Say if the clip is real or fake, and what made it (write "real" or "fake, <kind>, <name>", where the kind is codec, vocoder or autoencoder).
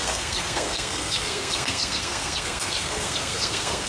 fake, codec, SNAC